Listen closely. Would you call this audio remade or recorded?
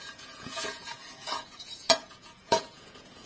remade